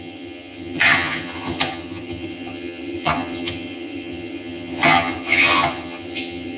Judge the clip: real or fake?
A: fake